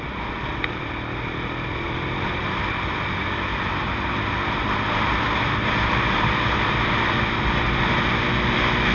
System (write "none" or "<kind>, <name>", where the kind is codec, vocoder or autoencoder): vocoder, BigVGAN v2